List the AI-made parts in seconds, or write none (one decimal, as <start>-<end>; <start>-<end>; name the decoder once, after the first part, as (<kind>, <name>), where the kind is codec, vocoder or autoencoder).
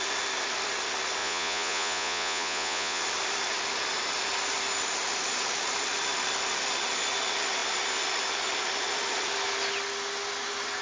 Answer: 1.2-3.0 (vocoder, Vocos)